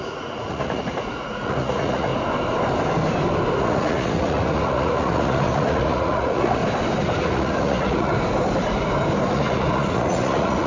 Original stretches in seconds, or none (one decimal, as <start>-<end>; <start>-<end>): 2.1-3.6; 6.6-7.2; 8.1-9.3